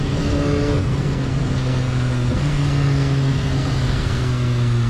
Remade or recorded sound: remade